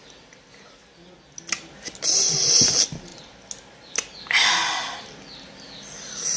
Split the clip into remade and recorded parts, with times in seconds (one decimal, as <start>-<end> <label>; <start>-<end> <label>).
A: 0.0-6.4 recorded